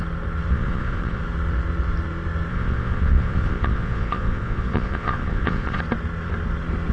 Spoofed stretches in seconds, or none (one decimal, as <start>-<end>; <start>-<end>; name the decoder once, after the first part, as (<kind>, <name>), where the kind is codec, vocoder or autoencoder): 0.5-1.2 (vocoder, Vocos); 2.5-5.8